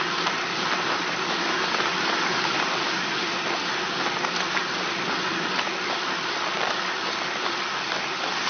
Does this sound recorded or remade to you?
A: recorded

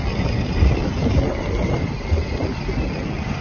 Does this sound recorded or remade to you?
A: recorded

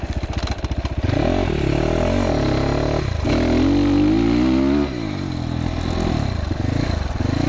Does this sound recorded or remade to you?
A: recorded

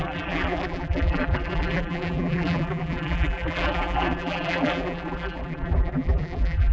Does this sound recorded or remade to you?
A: remade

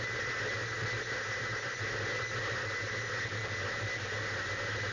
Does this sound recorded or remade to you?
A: recorded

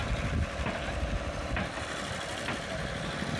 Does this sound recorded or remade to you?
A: recorded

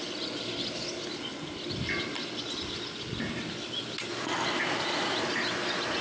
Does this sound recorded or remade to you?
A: recorded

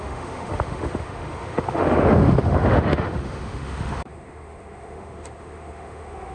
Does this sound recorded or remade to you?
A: remade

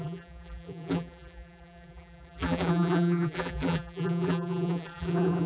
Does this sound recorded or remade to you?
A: remade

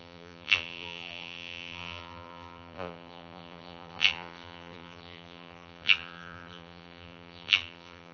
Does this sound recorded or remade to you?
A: remade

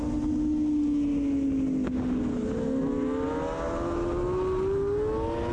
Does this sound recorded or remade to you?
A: recorded